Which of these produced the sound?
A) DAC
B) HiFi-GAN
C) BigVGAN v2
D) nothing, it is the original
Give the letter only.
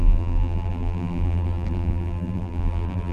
C